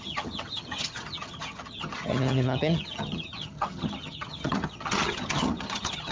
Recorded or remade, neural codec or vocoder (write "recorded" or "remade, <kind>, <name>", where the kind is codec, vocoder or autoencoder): remade, vocoder, HiFi-GAN